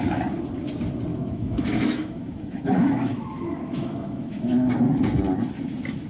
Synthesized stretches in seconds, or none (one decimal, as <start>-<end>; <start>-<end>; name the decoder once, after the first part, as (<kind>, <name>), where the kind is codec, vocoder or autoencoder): 1.1-4.7 (autoencoder, DAC-VAE)